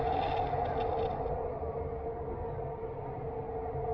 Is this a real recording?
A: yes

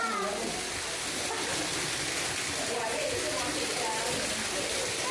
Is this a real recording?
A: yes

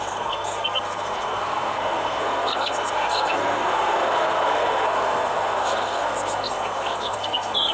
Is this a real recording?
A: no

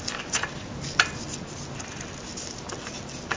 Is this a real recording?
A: yes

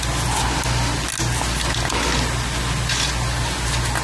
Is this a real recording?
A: yes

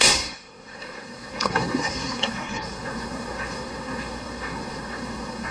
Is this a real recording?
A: no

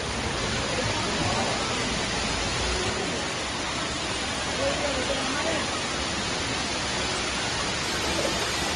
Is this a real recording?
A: yes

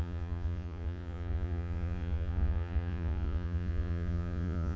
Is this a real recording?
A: no